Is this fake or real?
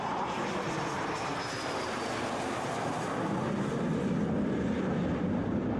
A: real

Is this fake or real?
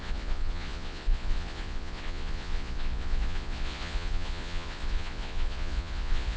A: fake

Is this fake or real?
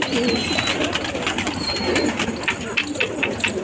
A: real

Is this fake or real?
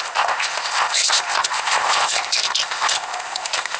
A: fake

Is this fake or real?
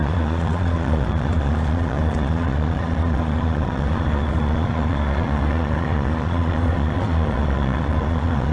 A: fake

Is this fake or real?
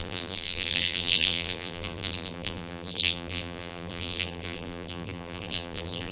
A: fake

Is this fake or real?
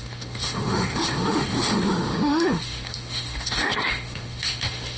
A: fake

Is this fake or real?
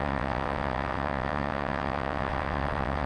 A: fake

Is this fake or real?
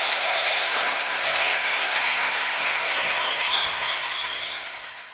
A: fake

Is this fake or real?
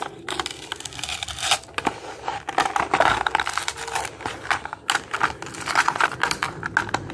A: real